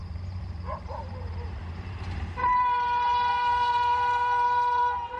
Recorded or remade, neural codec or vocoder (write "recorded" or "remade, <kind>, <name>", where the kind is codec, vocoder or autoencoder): remade, vocoder, BigVGAN v2